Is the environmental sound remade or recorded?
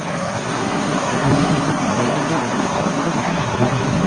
remade